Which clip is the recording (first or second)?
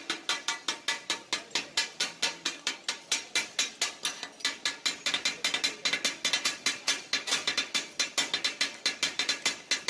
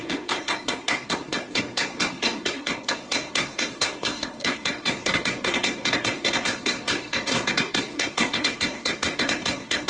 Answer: first